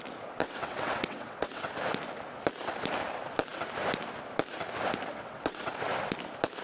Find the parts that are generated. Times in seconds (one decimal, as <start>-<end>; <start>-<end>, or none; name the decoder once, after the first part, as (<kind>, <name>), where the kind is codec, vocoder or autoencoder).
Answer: 0.4-1.7 (vocoder, WaveNeXt); 5.1-5.7